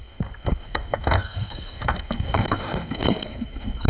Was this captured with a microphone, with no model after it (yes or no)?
no